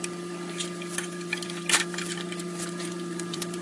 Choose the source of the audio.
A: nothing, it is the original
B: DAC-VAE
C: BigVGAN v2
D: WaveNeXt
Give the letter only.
C